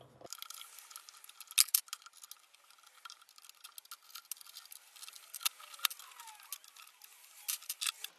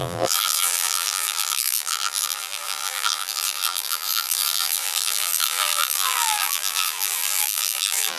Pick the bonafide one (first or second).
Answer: first